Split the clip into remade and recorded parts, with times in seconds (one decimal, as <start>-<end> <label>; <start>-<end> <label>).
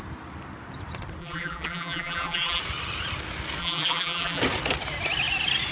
0.0-1.2 recorded; 1.2-2.6 remade; 2.6-3.6 recorded; 3.6-4.4 remade; 4.4-5.7 recorded